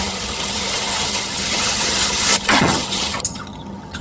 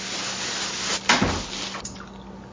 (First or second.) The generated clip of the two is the first